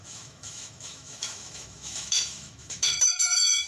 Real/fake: fake